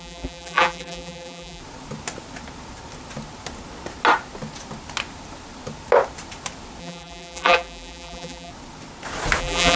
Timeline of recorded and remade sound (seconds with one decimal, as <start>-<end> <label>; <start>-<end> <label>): 0.0-1.6 remade; 1.6-6.8 recorded; 6.8-8.5 remade; 8.5-9.4 recorded; 9.4-9.8 remade